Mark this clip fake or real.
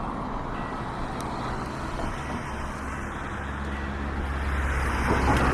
real